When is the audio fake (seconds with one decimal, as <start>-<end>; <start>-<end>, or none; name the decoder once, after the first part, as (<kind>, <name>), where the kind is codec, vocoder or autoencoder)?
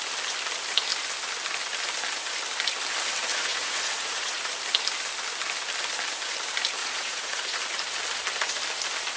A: 3.3-4.5 (vocoder, Vocos); 6.8-7.6